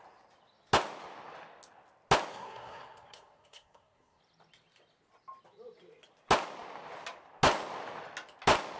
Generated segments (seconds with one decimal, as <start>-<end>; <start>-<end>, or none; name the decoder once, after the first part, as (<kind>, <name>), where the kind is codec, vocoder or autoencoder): 2.3-4.2 (codec, SNAC)